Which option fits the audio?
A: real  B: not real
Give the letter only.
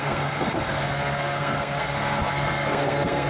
B